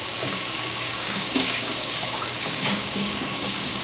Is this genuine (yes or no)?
no